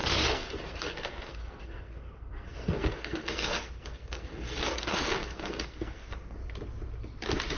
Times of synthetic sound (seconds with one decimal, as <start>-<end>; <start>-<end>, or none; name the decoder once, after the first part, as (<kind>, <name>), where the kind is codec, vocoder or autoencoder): 0.0-6.4 (codec, SNAC)